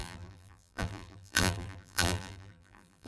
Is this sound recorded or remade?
remade